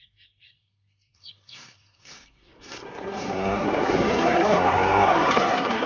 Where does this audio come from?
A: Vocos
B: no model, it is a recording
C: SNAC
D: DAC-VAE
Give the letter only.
C